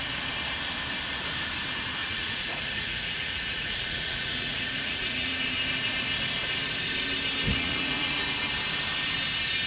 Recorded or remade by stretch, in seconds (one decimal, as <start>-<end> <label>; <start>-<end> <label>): 0.0-2.0 recorded; 2.0-5.4 remade; 5.4-7.5 recorded; 7.5-8.2 remade; 8.2-9.7 recorded